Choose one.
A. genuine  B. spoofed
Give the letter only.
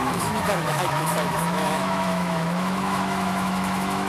B